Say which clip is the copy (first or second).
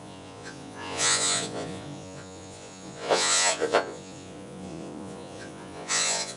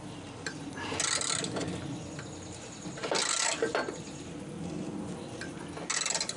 first